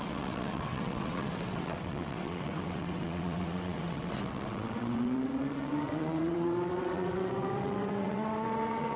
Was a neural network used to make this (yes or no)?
yes